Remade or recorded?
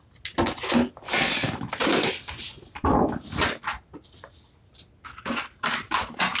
recorded